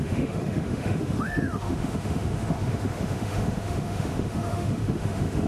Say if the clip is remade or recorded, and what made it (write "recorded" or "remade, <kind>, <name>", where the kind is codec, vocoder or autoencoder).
remade, autoencoder, DAC-VAE